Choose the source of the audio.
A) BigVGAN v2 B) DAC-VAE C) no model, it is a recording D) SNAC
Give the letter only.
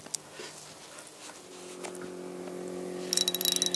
C